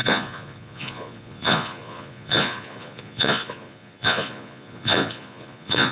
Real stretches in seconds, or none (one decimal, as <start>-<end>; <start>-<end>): none